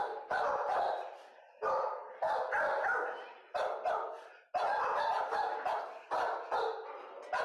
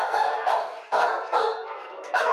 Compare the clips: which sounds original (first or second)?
first